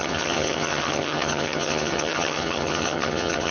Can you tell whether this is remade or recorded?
remade